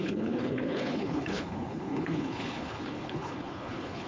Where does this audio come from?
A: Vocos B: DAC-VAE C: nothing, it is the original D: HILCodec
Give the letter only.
D